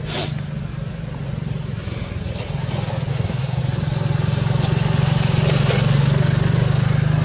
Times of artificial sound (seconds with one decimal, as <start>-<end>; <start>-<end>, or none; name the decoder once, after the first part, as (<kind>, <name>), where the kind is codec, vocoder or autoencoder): 3.1-3.6 (codec, SNAC)